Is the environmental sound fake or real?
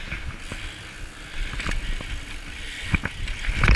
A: real